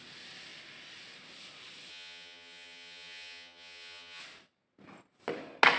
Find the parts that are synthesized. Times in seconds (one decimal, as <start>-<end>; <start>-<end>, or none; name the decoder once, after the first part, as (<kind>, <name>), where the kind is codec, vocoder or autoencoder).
1.9-4.2 (vocoder, HiFi-GAN)